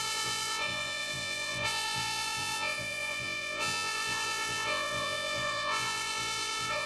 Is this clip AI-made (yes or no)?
yes